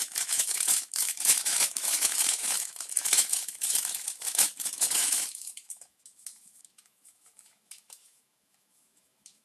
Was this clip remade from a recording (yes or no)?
yes